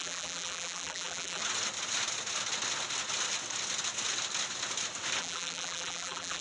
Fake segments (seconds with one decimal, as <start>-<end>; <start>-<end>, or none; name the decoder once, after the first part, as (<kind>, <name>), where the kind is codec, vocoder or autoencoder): 0.0-1.4 (vocoder, BigVGAN v2); 5.2-6.4